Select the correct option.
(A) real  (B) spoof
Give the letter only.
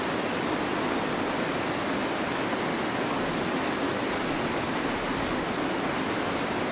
A